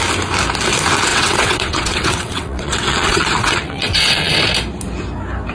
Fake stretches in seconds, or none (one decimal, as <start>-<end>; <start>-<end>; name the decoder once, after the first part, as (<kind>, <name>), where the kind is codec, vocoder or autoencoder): 1.1-4.4 (vocoder, WaveNeXt)